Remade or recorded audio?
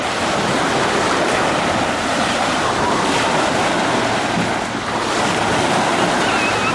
recorded